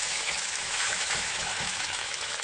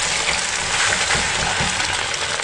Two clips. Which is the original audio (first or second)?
second